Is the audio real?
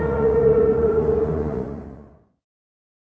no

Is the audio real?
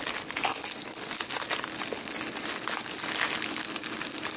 yes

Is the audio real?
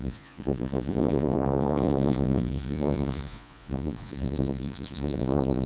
no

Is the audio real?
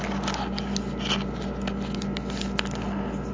yes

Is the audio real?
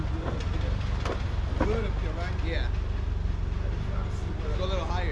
yes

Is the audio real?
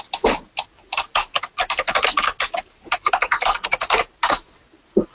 yes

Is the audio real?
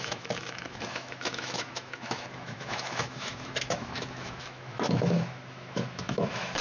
no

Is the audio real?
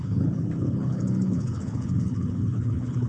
no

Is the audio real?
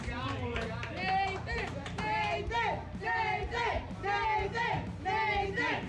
yes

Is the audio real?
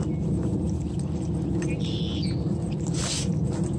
yes